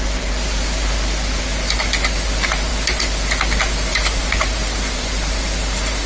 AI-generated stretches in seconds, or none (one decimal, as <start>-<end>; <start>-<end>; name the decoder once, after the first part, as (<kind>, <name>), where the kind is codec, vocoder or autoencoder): 0.0-2.7 (vocoder, BigVGAN v2); 3.9-6.1